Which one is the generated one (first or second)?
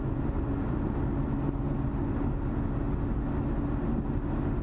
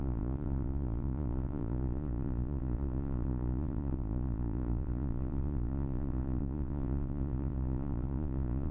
second